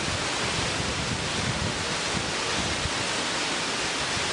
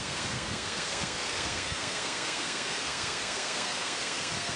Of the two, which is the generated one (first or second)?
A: second